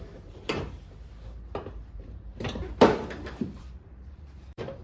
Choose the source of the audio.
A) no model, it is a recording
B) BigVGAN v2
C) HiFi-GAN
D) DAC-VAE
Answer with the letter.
B